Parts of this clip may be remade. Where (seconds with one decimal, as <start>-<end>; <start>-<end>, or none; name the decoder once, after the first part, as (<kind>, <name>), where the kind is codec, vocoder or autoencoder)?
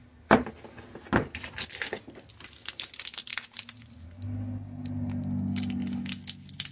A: none